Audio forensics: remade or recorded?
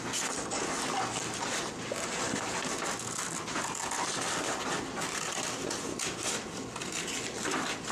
recorded